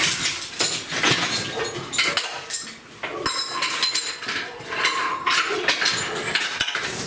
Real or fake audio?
real